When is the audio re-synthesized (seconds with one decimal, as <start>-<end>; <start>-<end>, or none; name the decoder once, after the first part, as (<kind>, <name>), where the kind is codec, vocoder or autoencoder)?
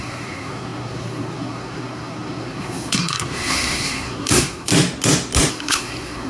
0.0-4.7 (codec, SNAC); 5.5-6.3